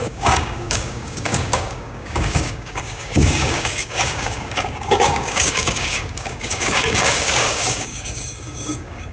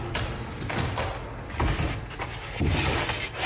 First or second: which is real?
second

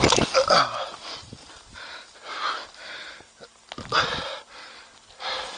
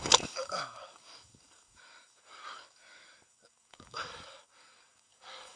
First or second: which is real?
first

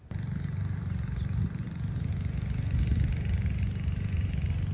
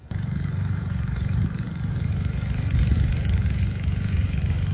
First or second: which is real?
first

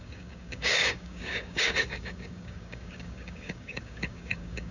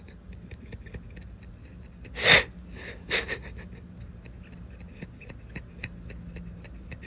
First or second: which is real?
second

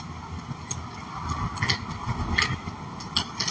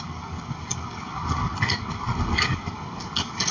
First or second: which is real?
first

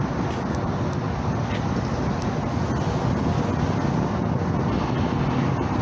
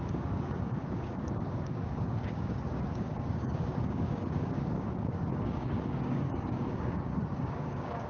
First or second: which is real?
first